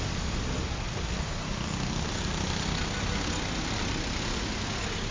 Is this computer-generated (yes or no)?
no